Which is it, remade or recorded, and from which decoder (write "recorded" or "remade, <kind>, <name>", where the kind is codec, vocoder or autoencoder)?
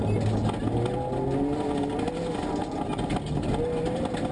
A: recorded